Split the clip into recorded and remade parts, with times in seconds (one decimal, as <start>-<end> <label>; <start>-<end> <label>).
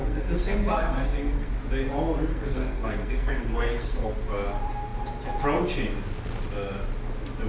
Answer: 0.0-1.5 remade; 1.5-2.3 recorded; 2.3-4.1 remade; 4.1-7.5 recorded